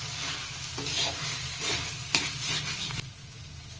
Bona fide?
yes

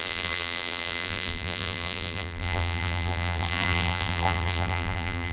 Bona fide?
no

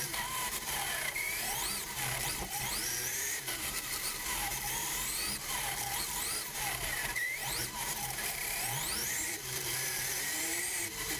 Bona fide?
no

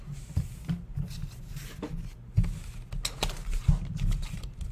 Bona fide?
yes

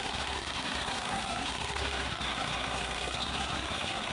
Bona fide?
no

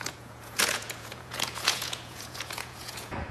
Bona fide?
no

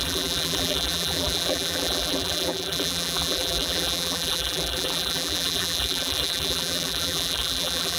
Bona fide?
no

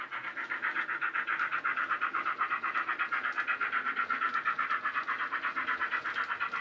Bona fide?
yes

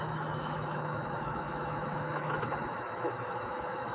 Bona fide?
no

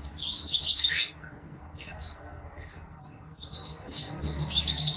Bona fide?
no